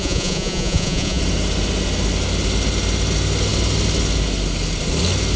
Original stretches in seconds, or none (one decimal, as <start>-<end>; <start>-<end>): 1.2-5.4